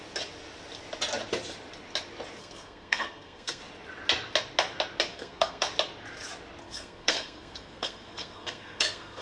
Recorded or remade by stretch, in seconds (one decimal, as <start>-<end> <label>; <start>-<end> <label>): 0.0-2.4 recorded; 2.4-3.6 remade; 3.6-5.1 recorded; 5.1-5.7 remade; 5.7-6.6 recorded; 6.6-9.2 remade